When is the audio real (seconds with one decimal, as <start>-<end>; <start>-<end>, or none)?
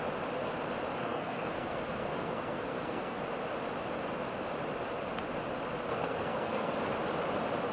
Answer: 0.0-1.0; 3.2-5.9; 6.7-7.7